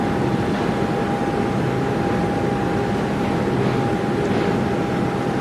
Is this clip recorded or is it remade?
recorded